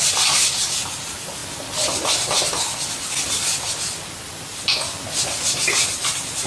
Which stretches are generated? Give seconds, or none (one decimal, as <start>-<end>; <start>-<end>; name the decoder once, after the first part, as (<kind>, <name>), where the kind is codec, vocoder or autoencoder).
none